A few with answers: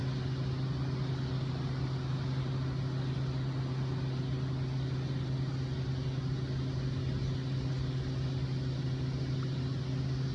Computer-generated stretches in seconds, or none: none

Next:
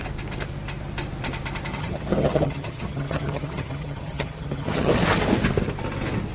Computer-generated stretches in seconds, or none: 1.7-4.9

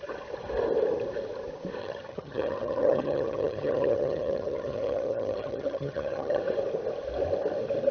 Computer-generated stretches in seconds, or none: 1.8-6.4

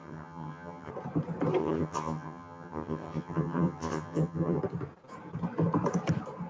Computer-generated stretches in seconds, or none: 0.0-0.9; 1.6-4.6